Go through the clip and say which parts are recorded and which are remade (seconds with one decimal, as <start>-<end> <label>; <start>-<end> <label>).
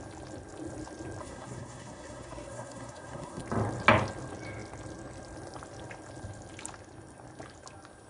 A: 0.0-1.2 recorded; 1.2-3.4 remade; 3.4-8.1 recorded